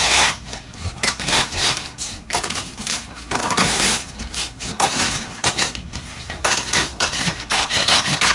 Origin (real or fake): fake